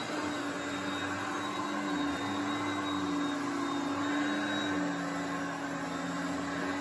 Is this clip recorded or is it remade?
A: recorded